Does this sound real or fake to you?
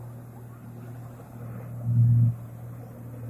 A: real